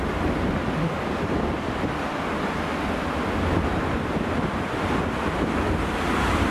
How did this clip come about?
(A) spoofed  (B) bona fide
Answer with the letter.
B